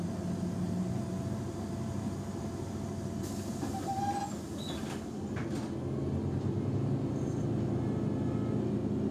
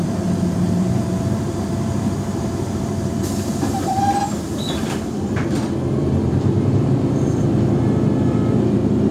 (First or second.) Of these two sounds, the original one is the first